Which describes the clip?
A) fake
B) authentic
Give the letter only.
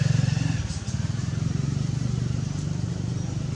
B